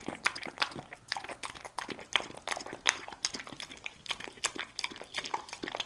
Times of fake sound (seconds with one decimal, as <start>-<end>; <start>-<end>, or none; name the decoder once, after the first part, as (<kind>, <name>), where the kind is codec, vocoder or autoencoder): none